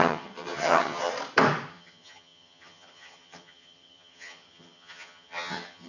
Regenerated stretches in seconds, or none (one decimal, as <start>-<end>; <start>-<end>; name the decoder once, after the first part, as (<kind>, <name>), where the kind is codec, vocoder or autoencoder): 0.0-1.1 (vocoder, HiFi-GAN); 1.7-5.9